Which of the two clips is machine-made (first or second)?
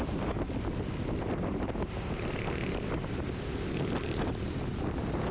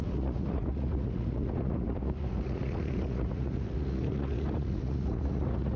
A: second